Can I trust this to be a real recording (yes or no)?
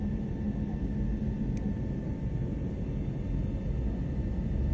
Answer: yes